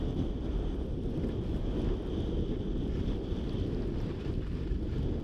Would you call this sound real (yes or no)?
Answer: yes